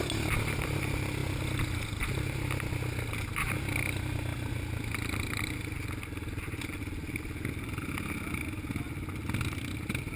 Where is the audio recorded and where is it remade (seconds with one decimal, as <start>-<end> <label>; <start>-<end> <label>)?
0.0-10.2 recorded